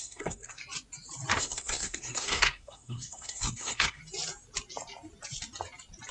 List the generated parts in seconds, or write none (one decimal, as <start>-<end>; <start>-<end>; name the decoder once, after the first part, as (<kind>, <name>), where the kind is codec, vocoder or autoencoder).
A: 0.0-0.6 (codec, SNAC); 1.4-4.0